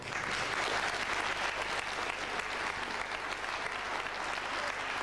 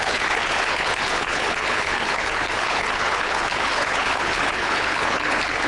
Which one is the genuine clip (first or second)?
first